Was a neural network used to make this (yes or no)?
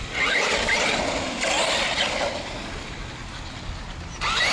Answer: no